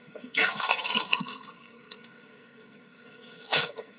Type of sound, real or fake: fake